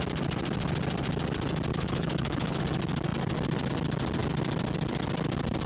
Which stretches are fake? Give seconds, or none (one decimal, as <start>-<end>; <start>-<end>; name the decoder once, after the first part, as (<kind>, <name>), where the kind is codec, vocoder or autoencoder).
1.7-2.6 (codec, HILCodec)